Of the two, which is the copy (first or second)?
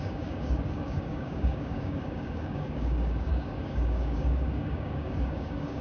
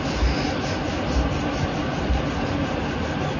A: first